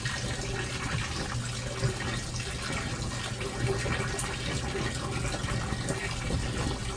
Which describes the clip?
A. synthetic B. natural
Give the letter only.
B